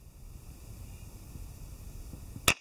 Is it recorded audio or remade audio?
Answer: recorded